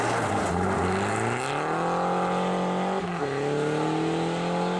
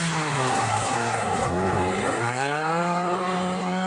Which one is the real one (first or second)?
first